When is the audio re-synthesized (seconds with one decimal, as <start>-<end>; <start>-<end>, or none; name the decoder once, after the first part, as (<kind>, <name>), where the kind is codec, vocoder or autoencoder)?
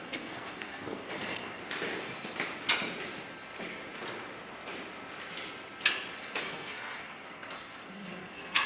0.0-1.6 (codec, SNAC); 6.4-8.7